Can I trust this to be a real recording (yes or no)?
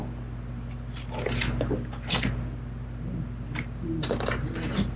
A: yes